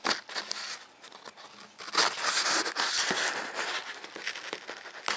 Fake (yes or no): no